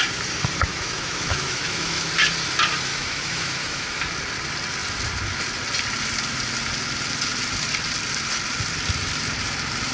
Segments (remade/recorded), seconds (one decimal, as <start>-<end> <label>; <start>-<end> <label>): 0.0-0.7 recorded; 0.7-2.1 remade; 2.1-2.9 recorded; 2.9-4.0 remade; 4.0-9.9 recorded